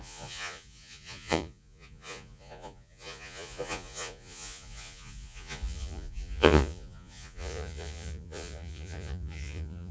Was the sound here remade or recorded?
remade